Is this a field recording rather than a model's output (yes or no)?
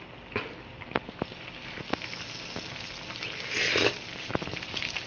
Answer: yes